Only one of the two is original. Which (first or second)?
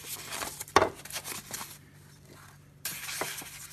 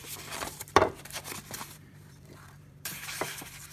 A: first